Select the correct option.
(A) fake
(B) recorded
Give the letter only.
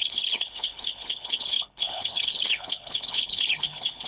A